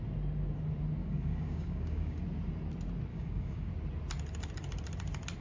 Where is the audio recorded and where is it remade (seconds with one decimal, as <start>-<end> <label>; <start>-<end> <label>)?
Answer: 0.0-1.0 recorded; 1.0-2.2 remade; 2.2-3.1 recorded; 3.1-3.7 remade; 3.7-5.4 recorded